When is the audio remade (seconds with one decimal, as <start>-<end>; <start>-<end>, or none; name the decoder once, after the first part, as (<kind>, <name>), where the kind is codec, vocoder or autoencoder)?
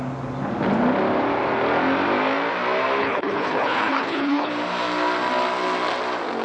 3.0-4.5 (codec, HILCodec)